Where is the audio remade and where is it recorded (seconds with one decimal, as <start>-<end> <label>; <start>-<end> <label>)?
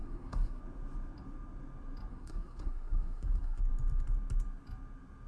0.0-0.6 remade; 0.6-2.1 recorded; 2.1-3.6 remade; 3.6-5.3 recorded